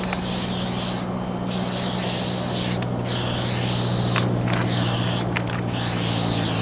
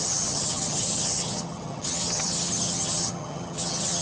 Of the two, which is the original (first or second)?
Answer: first